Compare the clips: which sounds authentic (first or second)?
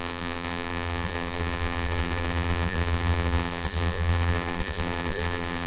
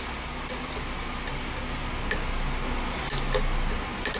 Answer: second